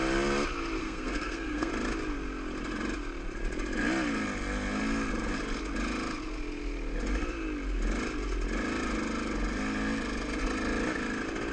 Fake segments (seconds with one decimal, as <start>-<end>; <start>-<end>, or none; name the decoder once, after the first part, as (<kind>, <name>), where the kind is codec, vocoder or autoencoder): 0.8-1.7 (codec, SNAC)